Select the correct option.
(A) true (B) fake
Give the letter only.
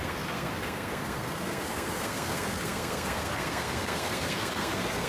B